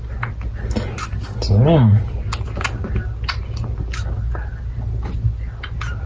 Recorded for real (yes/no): yes